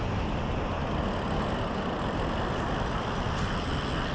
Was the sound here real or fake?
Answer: real